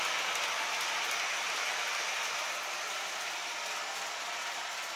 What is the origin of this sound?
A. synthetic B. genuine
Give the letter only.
B